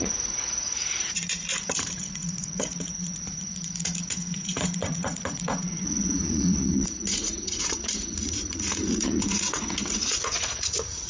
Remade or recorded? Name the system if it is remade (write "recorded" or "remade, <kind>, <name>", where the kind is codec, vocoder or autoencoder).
remade, vocoder, Vocos